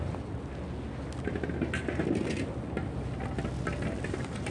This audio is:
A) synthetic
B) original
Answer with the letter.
B